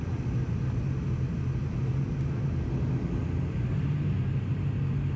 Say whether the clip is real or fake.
real